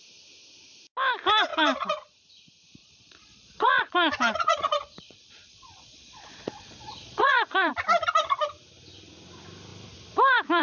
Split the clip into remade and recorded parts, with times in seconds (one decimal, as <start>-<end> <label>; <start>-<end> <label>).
0.0-1.5 recorded; 1.5-2.3 remade; 2.3-2.8 recorded; 2.8-7.7 remade; 7.7-10.6 recorded